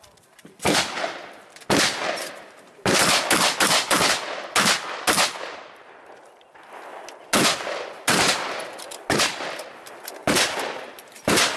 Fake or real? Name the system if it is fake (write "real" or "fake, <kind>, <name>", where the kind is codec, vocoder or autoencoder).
real